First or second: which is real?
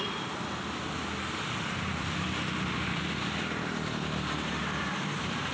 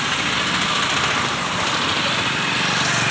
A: second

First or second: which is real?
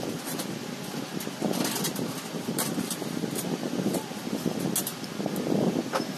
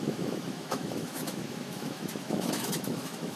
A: first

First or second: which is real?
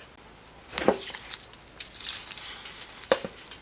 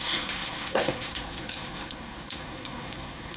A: first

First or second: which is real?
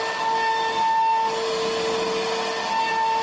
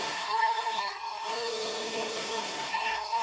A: first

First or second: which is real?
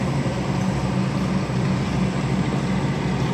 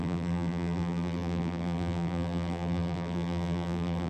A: first